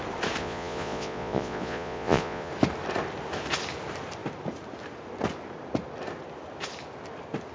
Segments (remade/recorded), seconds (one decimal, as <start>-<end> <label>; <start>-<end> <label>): 0.0-0.4 recorded; 0.4-2.5 remade; 2.5-7.5 recorded